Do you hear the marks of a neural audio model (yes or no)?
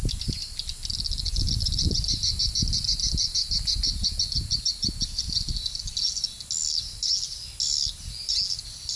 no